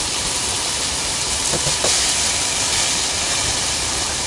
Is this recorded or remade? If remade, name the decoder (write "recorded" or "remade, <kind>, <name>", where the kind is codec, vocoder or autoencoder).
remade, vocoder, BigVGAN v2